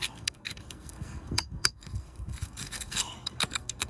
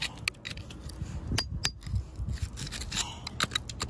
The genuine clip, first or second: second